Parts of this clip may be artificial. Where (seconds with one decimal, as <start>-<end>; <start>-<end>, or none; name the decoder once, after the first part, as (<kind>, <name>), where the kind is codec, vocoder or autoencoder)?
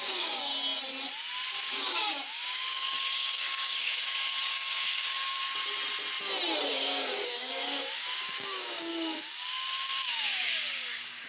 0.0-0.5 (codec, DAC); 1.5-5.4; 6.7-11.3